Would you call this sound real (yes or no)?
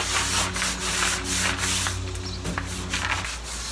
yes